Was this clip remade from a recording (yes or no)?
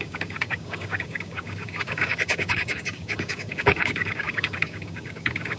yes